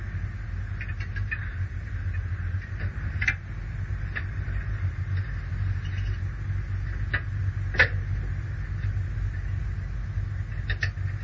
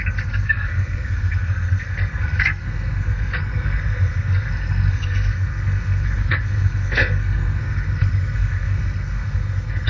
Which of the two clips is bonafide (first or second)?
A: first